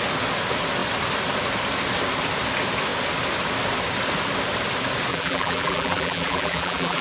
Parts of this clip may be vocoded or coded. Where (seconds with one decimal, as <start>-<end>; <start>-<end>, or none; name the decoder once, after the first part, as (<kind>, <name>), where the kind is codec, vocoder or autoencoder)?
5.1-7.0 (vocoder, BigVGAN v2)